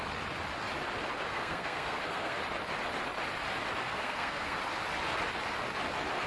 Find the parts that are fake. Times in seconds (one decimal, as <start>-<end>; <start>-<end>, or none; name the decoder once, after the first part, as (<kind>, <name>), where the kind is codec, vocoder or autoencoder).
1.3-2.4 (codec, SNAC); 3.8-4.6